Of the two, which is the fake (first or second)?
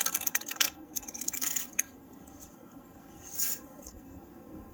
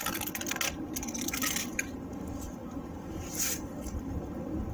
first